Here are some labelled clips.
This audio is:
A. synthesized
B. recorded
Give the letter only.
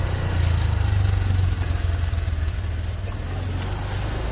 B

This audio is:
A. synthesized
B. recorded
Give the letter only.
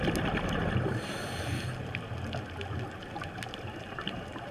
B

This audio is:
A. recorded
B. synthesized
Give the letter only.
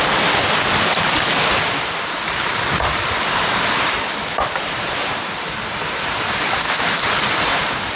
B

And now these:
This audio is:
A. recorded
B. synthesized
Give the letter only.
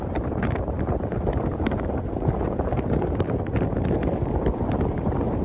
B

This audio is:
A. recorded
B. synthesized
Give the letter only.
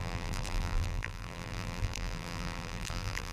B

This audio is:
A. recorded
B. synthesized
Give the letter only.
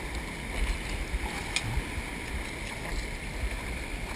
A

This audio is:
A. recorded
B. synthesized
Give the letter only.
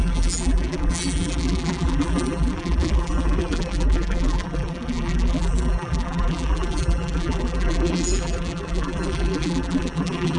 B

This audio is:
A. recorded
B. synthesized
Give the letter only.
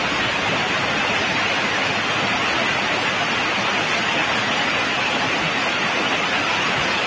A